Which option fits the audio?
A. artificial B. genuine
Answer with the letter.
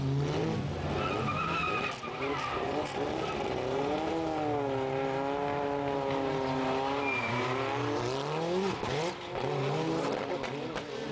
B